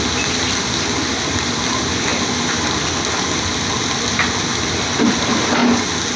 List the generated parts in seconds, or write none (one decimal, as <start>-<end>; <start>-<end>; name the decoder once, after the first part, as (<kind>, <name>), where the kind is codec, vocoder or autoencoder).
none